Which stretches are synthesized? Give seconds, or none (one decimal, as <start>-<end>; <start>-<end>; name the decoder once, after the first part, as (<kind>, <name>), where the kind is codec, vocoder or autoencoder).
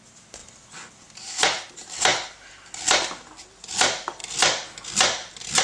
none